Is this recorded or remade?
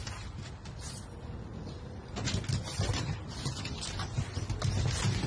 recorded